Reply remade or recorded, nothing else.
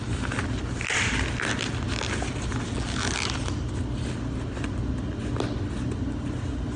recorded